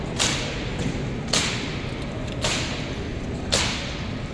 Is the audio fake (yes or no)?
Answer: no